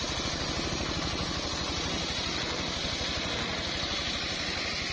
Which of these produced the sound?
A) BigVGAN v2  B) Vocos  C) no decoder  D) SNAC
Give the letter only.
C